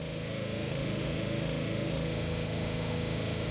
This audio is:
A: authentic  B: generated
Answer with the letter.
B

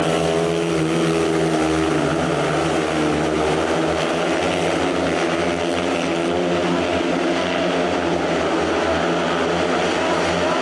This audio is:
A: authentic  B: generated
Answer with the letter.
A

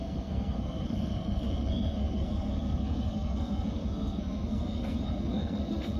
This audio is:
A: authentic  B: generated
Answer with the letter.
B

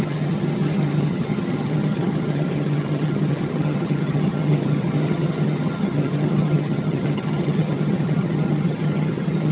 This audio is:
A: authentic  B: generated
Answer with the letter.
B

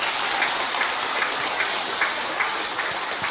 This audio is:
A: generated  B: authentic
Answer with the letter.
B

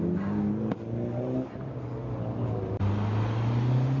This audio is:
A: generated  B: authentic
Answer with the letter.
B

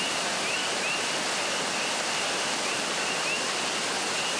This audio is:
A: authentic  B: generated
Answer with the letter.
A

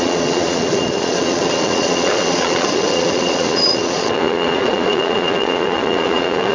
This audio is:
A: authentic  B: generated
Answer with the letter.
B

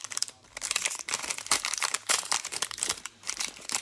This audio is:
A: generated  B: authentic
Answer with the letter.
A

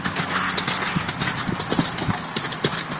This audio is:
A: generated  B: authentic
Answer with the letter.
B